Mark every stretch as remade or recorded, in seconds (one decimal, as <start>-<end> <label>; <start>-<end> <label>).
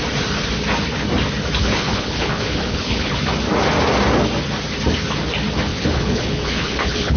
0.0-1.6 recorded; 1.6-3.1 remade; 3.1-5.7 recorded; 5.7-7.2 remade